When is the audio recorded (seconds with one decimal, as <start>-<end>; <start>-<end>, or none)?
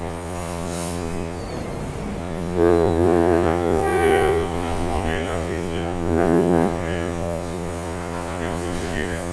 1.4-2.2